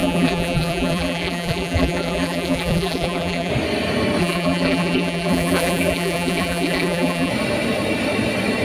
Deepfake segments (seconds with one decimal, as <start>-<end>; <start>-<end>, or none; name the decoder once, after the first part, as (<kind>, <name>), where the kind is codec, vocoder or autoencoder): 0.0-3.5 (vocoder, BigVGAN v2); 4.2-7.3